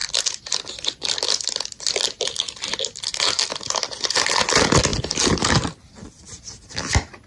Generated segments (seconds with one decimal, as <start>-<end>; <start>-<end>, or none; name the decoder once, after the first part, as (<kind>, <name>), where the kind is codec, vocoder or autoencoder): none